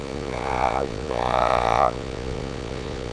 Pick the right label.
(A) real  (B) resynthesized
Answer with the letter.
B